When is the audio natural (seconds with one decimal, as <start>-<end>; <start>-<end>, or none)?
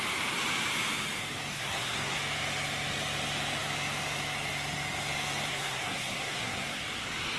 0.0-1.5; 2.2-5.5; 6.8-7.4